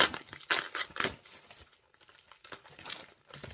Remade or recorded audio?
recorded